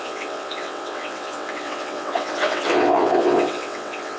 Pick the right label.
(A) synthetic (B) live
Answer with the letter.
A